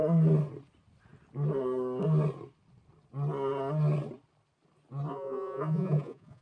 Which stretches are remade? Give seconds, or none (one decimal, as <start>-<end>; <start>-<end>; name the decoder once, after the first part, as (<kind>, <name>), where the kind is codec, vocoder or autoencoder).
5.1-6.4 (vocoder, Vocos)